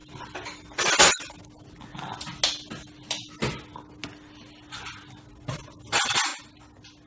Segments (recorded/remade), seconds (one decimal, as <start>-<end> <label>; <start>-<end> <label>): 0.0-7.1 recorded